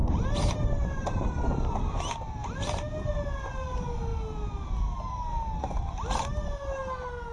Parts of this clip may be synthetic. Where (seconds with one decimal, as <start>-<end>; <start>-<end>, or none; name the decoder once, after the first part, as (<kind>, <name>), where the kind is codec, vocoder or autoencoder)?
0.0-1.7 (vocoder, BigVGAN v2); 2.4-3.1